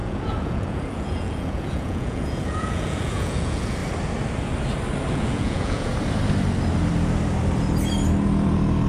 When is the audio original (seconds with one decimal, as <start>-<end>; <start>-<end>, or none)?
3.8-5.1; 5.9-8.9